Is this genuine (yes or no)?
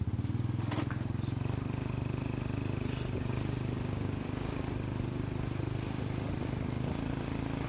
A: yes